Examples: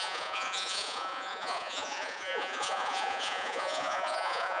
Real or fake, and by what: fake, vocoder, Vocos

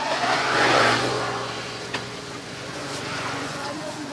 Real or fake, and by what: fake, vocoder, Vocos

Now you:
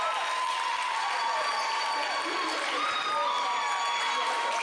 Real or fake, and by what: real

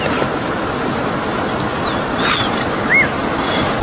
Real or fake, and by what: real